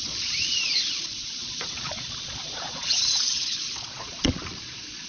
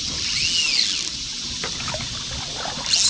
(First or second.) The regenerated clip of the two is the first